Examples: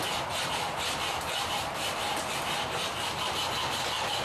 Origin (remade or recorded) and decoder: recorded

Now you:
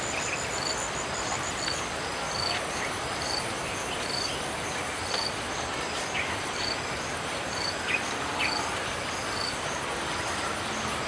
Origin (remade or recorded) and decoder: remade, vocoder, BigVGAN v2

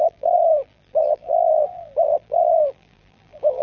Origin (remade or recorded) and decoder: remade, vocoder, BigVGAN v2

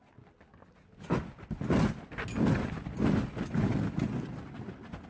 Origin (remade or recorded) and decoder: recorded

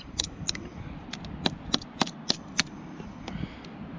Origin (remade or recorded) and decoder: recorded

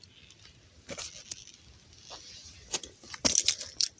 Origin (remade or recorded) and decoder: recorded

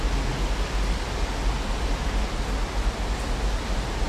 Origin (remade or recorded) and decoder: recorded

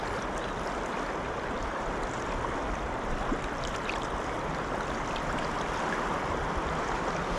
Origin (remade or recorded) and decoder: recorded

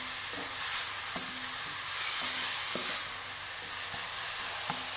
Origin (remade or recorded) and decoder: recorded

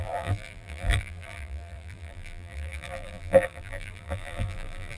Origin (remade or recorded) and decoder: remade, vocoder, BigVGAN v2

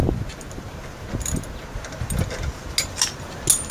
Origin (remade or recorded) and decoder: recorded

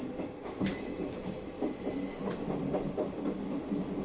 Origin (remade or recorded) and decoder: remade, vocoder, BigVGAN v2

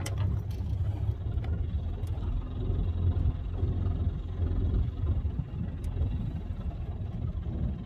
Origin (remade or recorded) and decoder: recorded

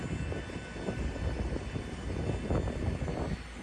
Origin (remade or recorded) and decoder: recorded